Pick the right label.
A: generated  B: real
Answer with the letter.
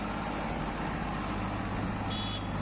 B